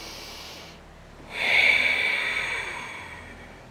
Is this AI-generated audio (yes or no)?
no